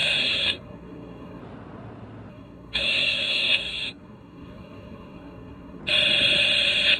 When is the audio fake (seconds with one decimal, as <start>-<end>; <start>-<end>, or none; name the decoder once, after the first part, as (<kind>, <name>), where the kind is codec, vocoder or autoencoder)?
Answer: 0.0-1.4 (codec, SNAC); 2.3-5.8